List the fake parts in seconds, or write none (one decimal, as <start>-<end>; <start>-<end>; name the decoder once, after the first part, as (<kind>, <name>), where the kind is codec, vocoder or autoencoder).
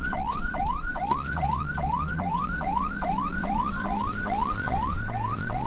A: 0.0-5.7 (vocoder, WaveNeXt)